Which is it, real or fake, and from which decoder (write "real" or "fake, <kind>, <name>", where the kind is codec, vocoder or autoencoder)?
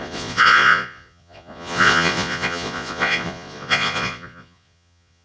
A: fake, vocoder, Vocos